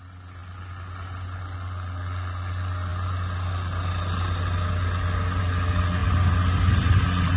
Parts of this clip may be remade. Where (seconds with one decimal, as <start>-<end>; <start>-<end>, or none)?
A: none